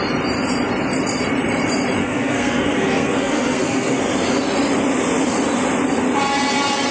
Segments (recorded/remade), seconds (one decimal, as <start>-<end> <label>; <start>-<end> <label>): 0.0-2.0 recorded; 2.0-4.0 remade; 4.0-6.9 recorded